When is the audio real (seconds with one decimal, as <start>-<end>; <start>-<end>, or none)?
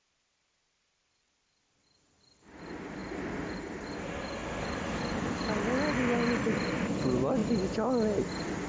4.4-6.5; 7.4-8.2